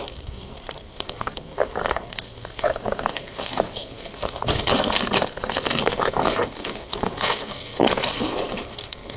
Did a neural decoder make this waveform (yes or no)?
yes